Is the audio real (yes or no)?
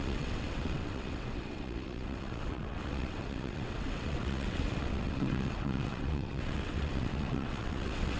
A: no